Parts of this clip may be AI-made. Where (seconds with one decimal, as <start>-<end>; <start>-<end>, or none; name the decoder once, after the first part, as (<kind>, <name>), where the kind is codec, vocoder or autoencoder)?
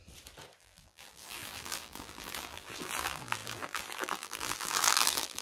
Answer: 0.6-5.4 (vocoder, BigVGAN v2)